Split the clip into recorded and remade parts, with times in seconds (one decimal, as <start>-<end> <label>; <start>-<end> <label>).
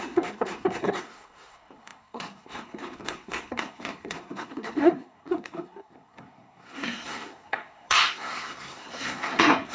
0.0-9.7 remade